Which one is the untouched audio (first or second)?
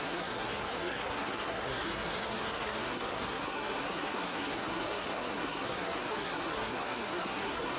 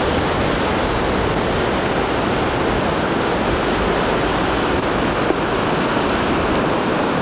second